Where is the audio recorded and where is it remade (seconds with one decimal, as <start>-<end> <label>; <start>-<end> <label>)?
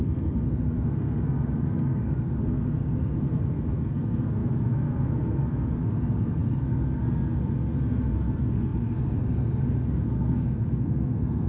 0.0-11.5 remade